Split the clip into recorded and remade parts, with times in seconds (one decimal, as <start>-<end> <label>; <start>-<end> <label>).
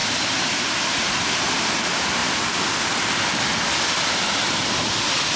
0.0-1.4 remade; 1.4-2.2 recorded; 2.2-5.4 remade